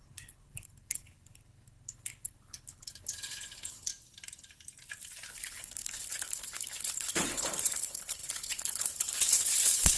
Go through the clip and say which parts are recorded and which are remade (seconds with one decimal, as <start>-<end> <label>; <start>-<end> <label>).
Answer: 0.0-3.9 remade; 3.9-5.3 recorded; 5.3-10.0 remade

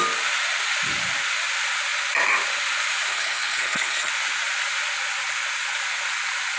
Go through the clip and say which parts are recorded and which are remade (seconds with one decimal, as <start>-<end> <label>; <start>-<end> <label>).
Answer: 0.0-3.1 recorded; 3.1-4.1 remade; 4.1-6.6 recorded